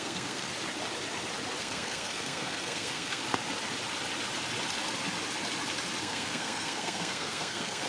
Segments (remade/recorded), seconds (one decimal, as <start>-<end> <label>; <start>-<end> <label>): 0.0-0.5 remade; 0.5-1.6 recorded; 1.6-3.2 remade; 3.2-6.0 recorded; 6.0-7.9 remade